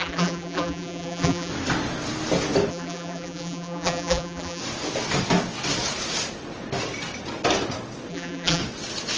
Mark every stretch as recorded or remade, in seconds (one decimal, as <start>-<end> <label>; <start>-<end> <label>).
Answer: 0.0-1.5 remade; 1.5-2.7 recorded; 2.7-4.6 remade; 4.6-8.1 recorded; 8.1-8.6 remade; 8.6-9.2 recorded